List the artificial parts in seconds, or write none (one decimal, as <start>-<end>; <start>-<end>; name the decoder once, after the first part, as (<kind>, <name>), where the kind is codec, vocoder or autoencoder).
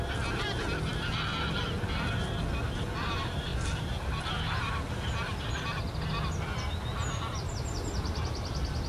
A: none